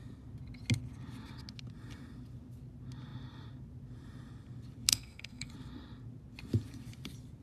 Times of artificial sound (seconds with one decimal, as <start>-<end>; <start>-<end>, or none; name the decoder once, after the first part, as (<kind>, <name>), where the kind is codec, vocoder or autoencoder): 4.9-5.5 (codec, SNAC)